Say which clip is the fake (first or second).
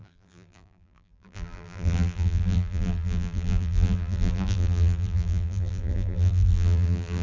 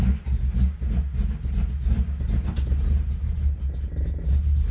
first